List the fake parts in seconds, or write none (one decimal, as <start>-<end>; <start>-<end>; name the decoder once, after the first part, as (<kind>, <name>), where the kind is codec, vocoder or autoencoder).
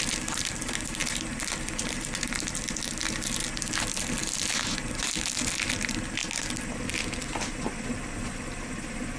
none